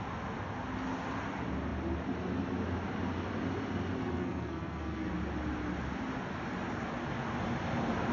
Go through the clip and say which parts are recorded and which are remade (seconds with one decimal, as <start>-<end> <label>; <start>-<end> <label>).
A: 0.0-4.0 recorded; 4.0-5.1 remade; 5.1-8.1 recorded